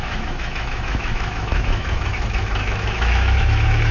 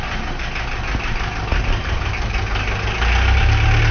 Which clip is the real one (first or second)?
second